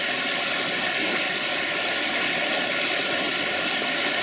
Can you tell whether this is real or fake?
real